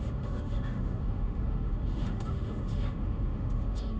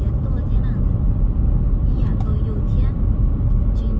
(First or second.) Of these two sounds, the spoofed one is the first